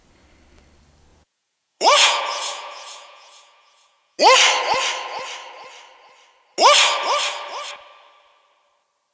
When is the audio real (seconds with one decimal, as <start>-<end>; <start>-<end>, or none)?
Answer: 0.0-1.1; 4.2-9.1